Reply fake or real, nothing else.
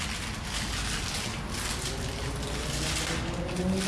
real